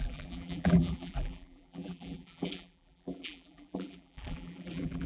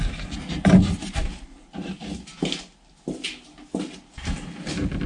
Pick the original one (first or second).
second